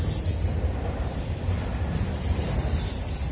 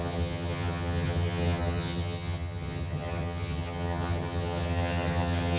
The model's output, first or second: second